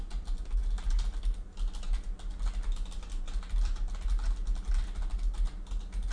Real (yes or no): yes